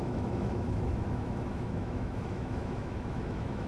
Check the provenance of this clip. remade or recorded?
remade